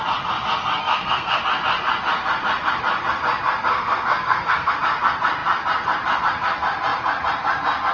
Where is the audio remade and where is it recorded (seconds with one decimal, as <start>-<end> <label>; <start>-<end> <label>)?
0.0-0.8 recorded; 0.8-1.4 remade; 1.4-3.7 recorded; 3.7-4.7 remade; 4.7-7.9 recorded